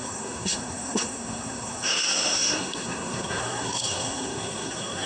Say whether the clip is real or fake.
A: fake